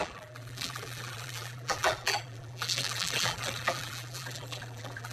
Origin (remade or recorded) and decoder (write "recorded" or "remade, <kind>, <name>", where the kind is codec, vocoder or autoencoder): remade, vocoder, BigVGAN v2